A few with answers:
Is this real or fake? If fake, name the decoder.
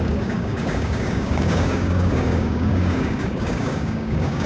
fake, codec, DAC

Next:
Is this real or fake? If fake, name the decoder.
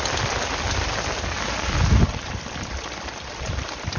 real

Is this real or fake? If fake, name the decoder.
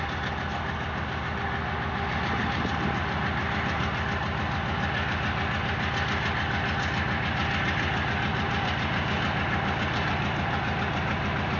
real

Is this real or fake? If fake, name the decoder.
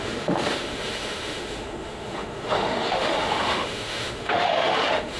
fake, autoencoder, DAC-VAE